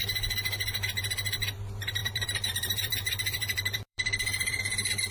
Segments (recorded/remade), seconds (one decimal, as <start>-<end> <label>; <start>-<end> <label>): 0.0-2.0 recorded; 2.0-4.6 remade; 4.6-5.1 recorded

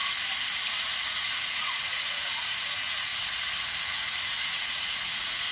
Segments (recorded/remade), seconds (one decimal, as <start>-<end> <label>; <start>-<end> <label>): 0.0-0.9 recorded; 0.9-3.1 remade; 3.1-3.8 recorded; 3.8-5.5 remade

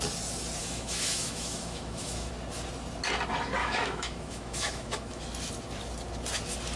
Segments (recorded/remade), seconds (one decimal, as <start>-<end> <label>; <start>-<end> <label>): 0.0-0.6 recorded; 0.6-2.3 remade; 2.3-3.6 recorded; 3.6-5.2 remade; 5.2-6.8 recorded

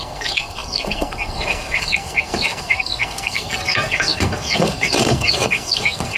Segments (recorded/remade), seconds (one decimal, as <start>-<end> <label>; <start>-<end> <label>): 0.0-6.2 remade

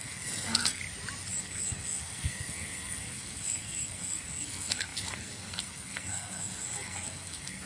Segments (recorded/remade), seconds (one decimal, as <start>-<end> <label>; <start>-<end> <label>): 0.0-0.8 remade; 0.8-1.4 recorded; 1.4-7.7 remade

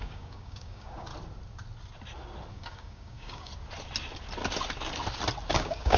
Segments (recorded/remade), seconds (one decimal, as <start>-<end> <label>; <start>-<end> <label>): 0.0-1.1 remade; 1.1-2.5 recorded; 2.5-3.5 remade; 3.5-5.5 recorded; 5.5-6.0 remade

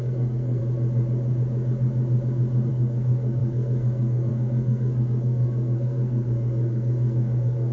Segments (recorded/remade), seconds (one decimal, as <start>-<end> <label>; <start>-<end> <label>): 0.0-0.6 remade; 0.6-2.7 recorded; 2.7-7.7 remade

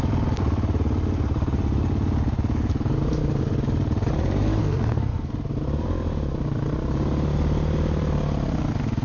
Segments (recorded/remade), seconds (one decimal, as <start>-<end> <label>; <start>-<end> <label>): 0.0-4.6 recorded; 4.6-5.3 remade; 5.3-9.0 recorded